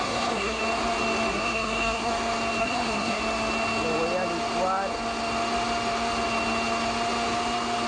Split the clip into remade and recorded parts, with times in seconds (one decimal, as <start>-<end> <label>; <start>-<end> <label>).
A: 0.0-0.6 remade; 0.6-1.3 recorded; 1.3-2.1 remade; 2.1-2.6 recorded; 2.6-3.2 remade; 3.2-7.9 recorded